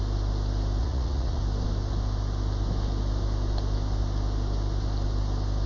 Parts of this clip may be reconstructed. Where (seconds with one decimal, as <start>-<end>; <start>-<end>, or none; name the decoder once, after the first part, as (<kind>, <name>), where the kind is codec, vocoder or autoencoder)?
0.8-1.4 (vocoder, Vocos)